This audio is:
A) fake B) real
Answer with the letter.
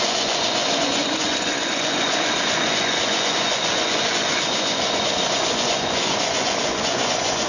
A